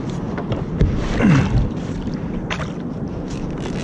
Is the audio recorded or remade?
recorded